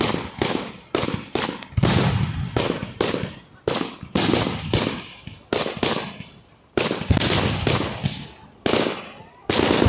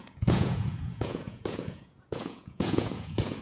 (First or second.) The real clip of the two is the first